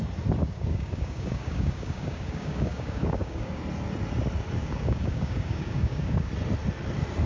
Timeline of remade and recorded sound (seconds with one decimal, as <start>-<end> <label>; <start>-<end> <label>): 0.0-0.4 recorded; 0.4-3.6 remade; 3.6-4.6 recorded; 4.6-6.3 remade; 6.3-7.3 recorded